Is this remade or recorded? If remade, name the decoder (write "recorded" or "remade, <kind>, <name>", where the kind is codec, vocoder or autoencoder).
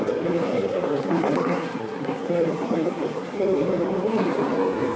remade, codec, SNAC